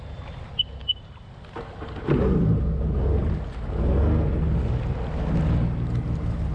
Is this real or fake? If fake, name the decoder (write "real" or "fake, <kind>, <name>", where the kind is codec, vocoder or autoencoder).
real